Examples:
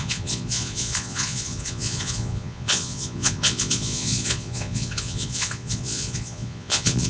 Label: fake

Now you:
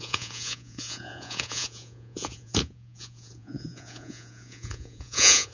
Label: fake